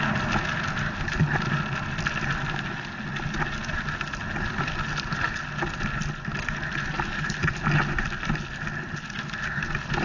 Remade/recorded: recorded